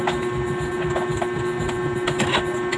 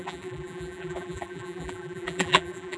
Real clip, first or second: first